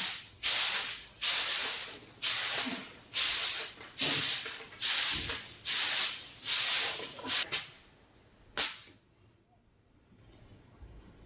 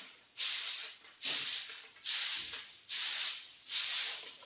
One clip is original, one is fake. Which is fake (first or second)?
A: second